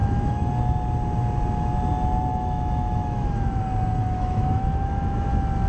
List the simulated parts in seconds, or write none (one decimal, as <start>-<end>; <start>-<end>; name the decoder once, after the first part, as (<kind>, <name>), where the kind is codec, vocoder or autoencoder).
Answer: 0.0-0.5 (autoencoder, DAC-VAE); 2.3-3.6; 4.0-5.3